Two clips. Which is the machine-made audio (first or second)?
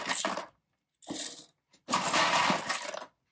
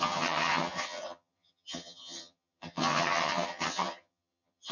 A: second